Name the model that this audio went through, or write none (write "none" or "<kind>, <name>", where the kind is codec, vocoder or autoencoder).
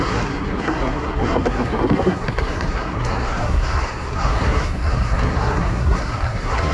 codec, SNAC